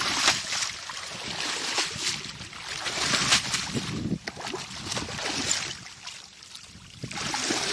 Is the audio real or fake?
real